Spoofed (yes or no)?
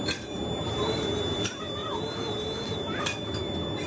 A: no